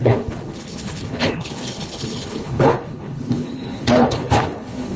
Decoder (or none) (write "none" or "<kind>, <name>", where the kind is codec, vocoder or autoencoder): codec, HILCodec